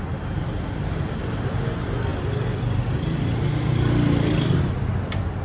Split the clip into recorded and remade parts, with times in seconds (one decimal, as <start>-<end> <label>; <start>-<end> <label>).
0.0-5.4 recorded

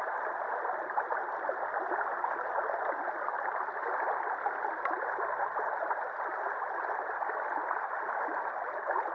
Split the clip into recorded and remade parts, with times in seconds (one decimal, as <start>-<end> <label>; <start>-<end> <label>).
0.0-9.1 recorded

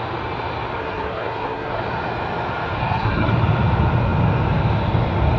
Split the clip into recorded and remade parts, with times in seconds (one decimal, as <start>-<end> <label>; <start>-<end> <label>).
0.0-0.8 recorded; 0.8-1.8 remade; 1.8-2.8 recorded; 2.8-3.3 remade; 3.3-5.4 recorded

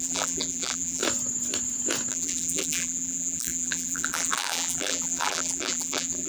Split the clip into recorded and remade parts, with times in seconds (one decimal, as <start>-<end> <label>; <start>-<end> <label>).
0.0-1.0 remade; 1.0-2.1 recorded; 2.1-6.3 remade

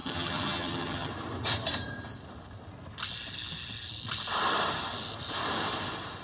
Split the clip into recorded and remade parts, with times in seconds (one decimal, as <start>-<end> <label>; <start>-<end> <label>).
0.0-1.1 remade; 1.1-6.2 recorded

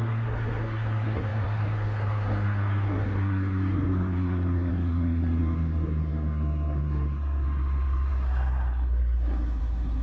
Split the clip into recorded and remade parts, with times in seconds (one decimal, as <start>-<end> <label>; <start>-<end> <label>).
0.0-10.0 remade

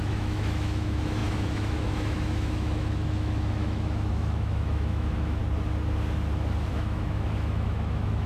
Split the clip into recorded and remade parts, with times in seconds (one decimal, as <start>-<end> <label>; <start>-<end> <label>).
0.0-5.4 remade; 5.4-6.7 recorded; 6.7-8.3 remade